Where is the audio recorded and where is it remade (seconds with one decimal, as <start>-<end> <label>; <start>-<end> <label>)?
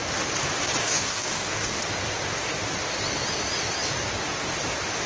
0.0-0.8 recorded; 0.8-1.8 remade; 1.8-5.1 recorded